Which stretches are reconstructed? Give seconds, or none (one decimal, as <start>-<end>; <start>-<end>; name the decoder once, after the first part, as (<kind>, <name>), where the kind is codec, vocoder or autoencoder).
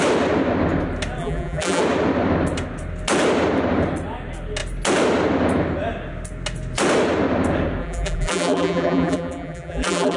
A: 1.2-1.8 (vocoder, BigVGAN v2); 7.8-10.2